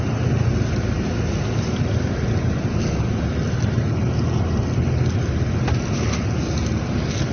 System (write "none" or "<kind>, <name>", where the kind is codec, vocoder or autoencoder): none